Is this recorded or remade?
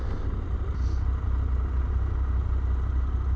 recorded